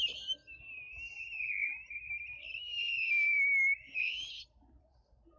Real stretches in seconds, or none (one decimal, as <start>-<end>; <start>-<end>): 0.0-5.4